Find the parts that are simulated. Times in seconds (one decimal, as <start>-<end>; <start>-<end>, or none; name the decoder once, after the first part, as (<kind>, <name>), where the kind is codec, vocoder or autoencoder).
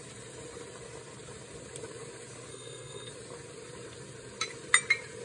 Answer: 2.5-3.1 (codec, SNAC)